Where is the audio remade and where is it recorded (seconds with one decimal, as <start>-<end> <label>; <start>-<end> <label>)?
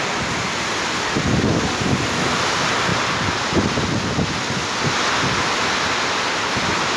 0.0-7.0 recorded